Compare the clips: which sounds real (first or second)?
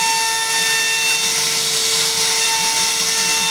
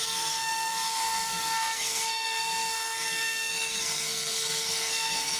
first